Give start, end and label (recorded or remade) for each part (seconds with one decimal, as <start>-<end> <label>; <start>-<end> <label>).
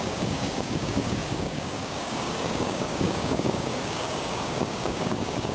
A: 0.0-5.5 remade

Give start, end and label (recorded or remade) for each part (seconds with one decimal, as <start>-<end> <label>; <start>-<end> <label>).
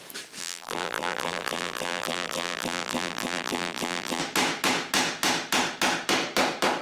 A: 0.0-0.4 recorded; 0.4-4.2 remade; 4.2-6.8 recorded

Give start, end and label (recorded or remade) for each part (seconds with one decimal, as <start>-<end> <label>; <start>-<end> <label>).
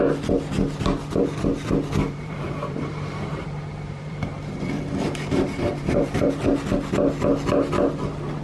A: 0.0-2.0 recorded; 2.0-6.3 remade; 6.3-8.4 recorded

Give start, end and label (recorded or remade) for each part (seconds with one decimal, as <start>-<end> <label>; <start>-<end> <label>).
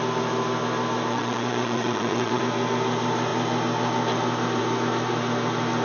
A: 0.0-1.1 recorded; 1.1-2.4 remade; 2.4-5.8 recorded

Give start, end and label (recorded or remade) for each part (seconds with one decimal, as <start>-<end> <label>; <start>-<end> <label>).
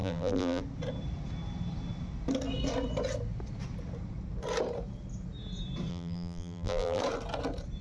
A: 0.0-0.6 remade; 0.6-5.9 recorded; 5.9-7.0 remade; 7.0-7.8 recorded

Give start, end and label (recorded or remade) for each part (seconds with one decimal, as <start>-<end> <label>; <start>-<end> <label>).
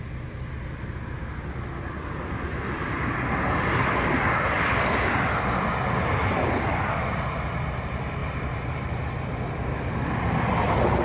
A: 0.0-8.2 recorded; 8.2-9.7 remade; 9.7-11.0 recorded